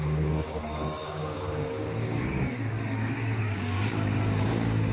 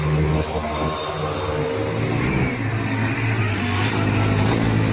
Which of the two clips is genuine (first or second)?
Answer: second